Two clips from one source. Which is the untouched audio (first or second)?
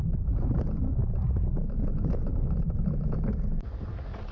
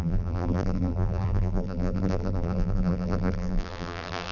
first